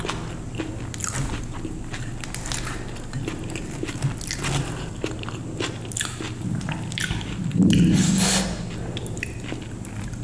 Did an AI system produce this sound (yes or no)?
no